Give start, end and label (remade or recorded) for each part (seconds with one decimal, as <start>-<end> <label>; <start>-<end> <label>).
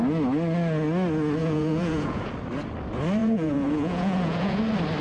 0.0-1.4 recorded; 1.4-2.2 remade; 2.2-3.2 recorded; 3.2-4.6 remade; 4.6-5.0 recorded